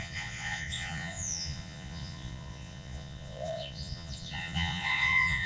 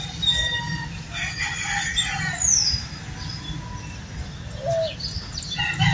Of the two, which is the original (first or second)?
second